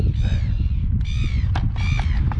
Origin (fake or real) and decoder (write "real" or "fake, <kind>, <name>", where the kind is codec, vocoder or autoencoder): real